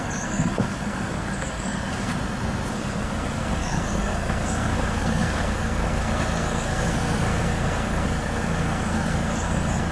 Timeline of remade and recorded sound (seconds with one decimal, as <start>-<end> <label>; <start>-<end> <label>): 0.0-2.1 remade; 2.1-2.7 recorded; 2.7-9.9 remade